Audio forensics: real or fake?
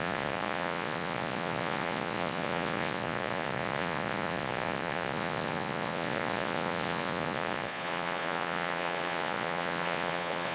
fake